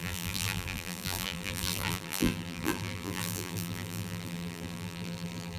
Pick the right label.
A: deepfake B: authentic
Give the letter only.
A